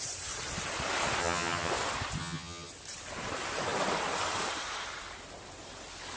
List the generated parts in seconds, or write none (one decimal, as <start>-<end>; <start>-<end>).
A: 1.2-1.7; 2.2-2.7